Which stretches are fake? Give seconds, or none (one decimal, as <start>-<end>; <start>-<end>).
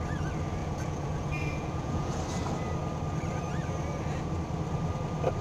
0.6-2.2